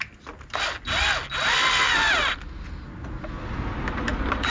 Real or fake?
real